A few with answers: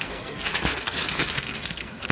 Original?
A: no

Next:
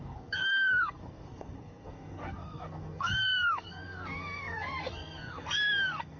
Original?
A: no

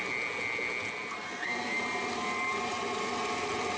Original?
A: yes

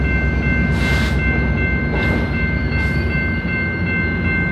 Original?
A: yes